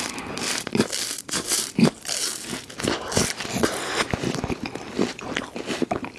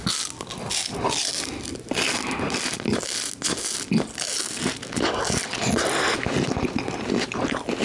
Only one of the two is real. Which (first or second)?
second